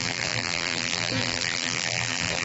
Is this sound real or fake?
fake